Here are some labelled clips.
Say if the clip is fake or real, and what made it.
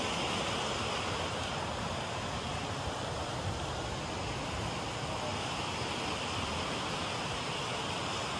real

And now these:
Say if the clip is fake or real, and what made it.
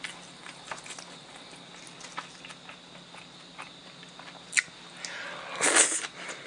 real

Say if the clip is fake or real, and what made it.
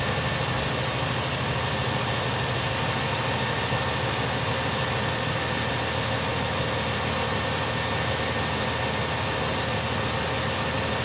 real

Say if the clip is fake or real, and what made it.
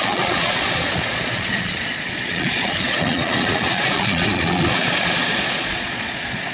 fake, vocoder, Vocos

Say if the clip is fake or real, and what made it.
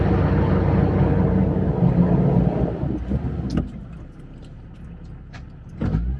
real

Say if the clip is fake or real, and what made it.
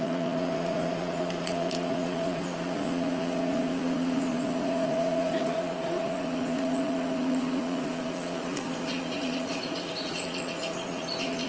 fake, vocoder, Vocos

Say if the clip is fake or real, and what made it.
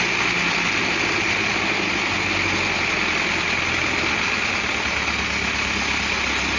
real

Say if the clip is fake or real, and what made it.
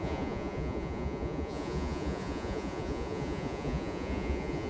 fake, vocoder, Vocos